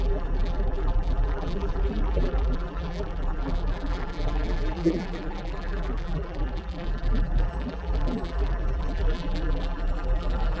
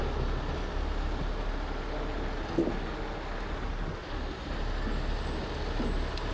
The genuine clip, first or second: second